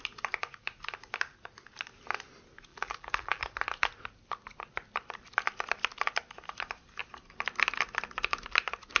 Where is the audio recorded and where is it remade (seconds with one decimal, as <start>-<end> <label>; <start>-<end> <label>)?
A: 0.0-2.7 recorded; 2.7-3.4 remade; 3.4-9.0 recorded